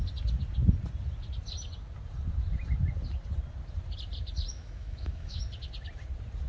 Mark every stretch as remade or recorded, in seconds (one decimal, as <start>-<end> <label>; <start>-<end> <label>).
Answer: 0.0-4.5 recorded; 4.5-5.4 remade; 5.4-6.5 recorded